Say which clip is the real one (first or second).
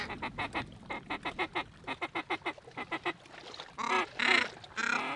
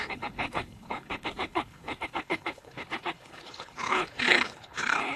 first